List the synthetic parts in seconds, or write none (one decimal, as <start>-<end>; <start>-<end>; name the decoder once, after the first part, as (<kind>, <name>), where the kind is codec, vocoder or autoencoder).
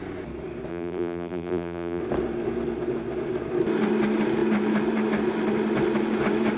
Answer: 0.7-2.0 (vocoder, BigVGAN v2)